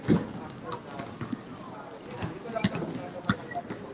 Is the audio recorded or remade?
recorded